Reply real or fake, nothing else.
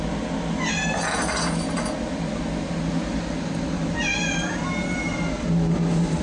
real